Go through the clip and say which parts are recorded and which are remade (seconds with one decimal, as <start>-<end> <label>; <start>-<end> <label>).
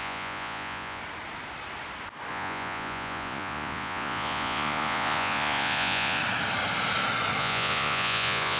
0.0-1.0 remade; 1.0-2.3 recorded; 2.3-6.2 remade; 6.2-7.4 recorded; 7.4-8.6 remade